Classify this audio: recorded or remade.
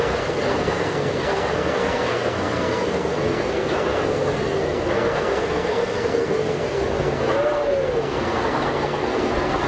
remade